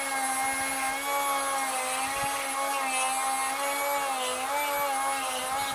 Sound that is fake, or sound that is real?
real